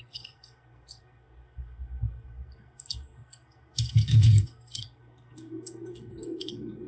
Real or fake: fake